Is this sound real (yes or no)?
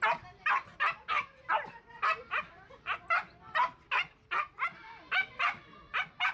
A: yes